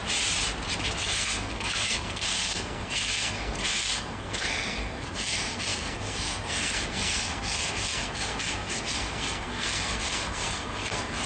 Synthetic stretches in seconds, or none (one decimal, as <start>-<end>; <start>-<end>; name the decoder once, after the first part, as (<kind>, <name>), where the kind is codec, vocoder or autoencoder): 1.0-11.3 (codec, SNAC)